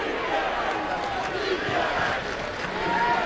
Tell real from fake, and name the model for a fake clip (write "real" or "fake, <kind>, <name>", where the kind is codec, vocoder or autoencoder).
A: real